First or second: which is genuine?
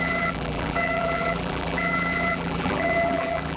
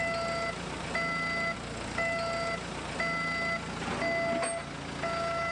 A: second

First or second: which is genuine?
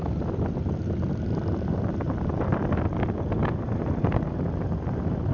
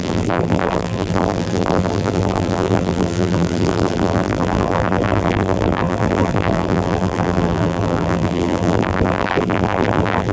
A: first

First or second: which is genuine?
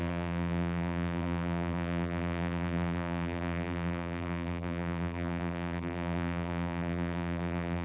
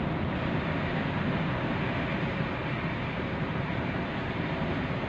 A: second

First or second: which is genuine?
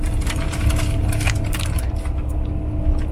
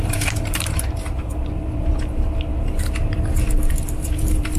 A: first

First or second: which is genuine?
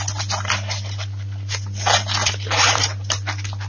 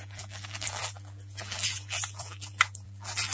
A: first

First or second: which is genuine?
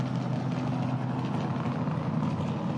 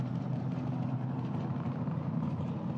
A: first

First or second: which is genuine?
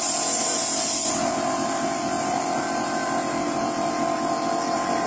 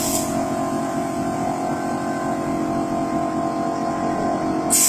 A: second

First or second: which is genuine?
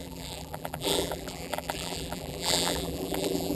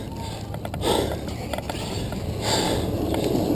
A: second